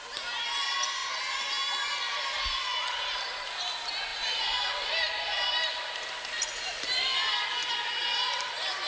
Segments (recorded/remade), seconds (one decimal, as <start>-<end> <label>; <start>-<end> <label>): 0.0-4.1 recorded; 4.1-7.7 remade; 7.7-8.9 recorded